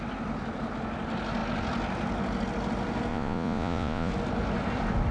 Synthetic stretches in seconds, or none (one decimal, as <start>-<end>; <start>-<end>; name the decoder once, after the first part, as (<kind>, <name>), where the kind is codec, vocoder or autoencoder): 3.1-4.1 (vocoder, Vocos)